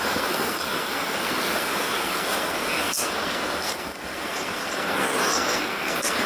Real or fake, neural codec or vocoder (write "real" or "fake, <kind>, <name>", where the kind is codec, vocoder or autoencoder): fake, codec, SNAC